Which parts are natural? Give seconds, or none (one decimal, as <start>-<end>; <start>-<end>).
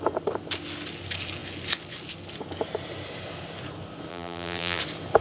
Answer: 0.0-4.1; 4.8-5.2